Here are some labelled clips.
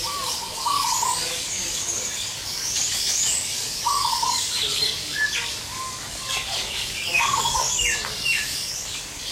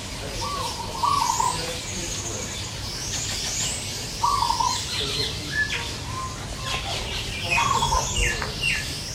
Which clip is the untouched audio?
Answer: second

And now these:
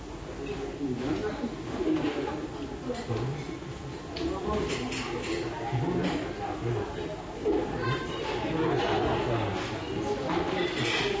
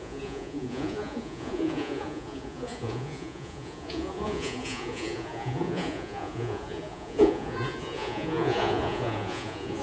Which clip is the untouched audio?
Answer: first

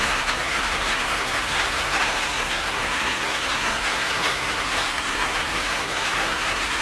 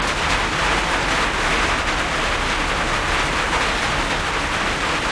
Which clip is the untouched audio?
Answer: second